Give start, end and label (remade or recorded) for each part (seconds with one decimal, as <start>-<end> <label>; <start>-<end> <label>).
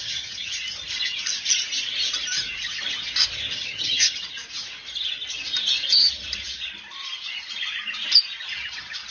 0.0-0.6 remade; 0.6-3.5 recorded; 3.5-4.3 remade; 4.3-9.1 recorded